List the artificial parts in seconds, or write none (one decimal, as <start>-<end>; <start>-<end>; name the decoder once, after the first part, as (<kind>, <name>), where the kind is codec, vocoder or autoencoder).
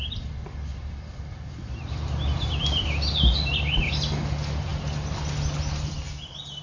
0.7-3.9 (vocoder, BigVGAN v2)